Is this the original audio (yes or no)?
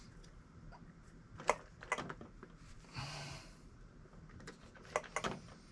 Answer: yes